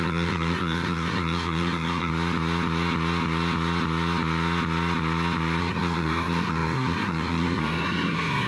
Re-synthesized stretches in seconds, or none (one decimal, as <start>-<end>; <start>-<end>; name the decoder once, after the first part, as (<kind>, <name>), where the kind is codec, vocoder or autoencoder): 0.0-2.1 (codec, SNAC); 5.6-8.5